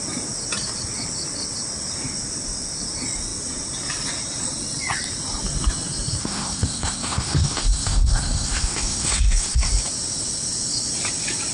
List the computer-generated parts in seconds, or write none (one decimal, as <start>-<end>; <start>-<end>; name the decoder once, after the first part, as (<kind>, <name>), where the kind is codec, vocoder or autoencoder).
6.2-9.7 (codec, SNAC)

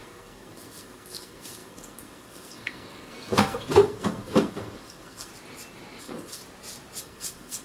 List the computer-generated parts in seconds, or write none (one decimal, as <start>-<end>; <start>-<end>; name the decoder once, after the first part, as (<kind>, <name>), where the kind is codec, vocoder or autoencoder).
0.0-5.3 (codec, SNAC); 6.0-6.4; 7.0-7.6

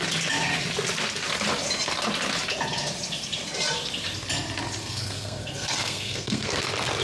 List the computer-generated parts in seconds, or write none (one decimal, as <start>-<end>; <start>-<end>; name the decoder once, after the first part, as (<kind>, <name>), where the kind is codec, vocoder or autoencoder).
4.8-6.6 (codec, SNAC)